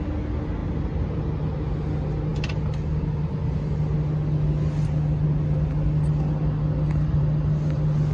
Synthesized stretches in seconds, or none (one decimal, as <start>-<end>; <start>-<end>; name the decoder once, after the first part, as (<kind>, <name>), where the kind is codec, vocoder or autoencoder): none